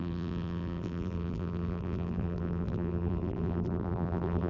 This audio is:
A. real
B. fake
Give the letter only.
B